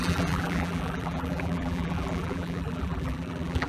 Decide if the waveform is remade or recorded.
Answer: remade